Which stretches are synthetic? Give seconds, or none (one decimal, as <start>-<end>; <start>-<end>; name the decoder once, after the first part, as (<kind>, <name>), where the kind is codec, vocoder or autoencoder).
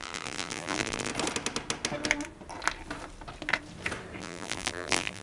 0.0-1.1 (vocoder, BigVGAN v2); 4.2-5.2